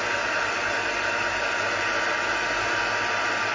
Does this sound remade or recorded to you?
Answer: recorded